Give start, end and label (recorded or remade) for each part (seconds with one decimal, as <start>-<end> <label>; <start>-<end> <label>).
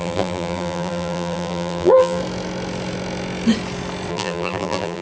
0.0-2.2 remade; 2.2-4.1 recorded; 4.1-5.0 remade